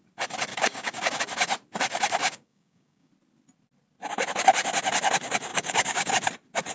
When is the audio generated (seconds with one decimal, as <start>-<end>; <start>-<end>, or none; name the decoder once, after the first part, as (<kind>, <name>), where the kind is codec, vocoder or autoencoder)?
0.5-1.2 (codec, DAC); 2.2-3.1; 5.5-6.1